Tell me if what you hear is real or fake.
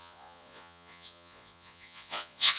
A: fake